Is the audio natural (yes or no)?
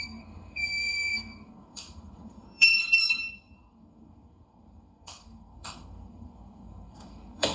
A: no